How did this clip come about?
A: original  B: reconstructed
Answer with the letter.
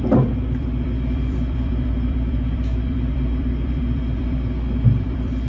B